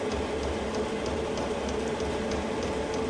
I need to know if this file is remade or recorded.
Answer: recorded